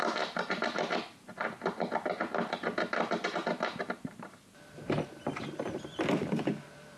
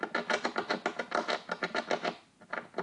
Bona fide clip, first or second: second